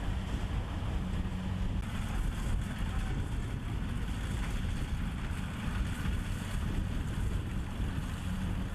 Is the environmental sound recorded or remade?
recorded